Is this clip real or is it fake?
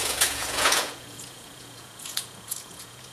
fake